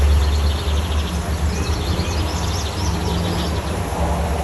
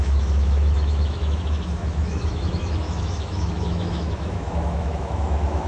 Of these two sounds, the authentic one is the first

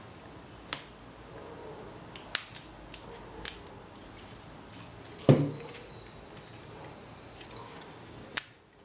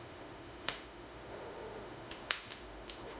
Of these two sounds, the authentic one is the first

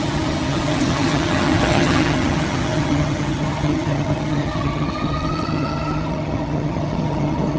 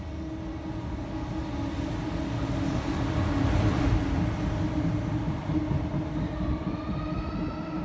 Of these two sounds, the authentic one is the second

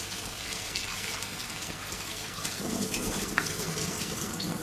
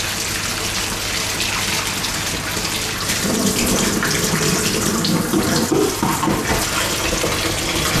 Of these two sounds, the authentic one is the second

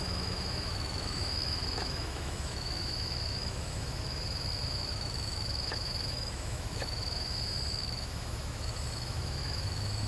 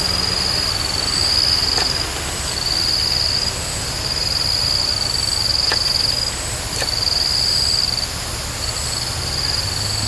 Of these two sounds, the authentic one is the second